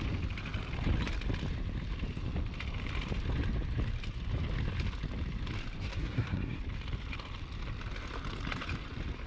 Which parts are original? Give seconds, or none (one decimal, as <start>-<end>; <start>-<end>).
0.0-5.9; 6.6-9.3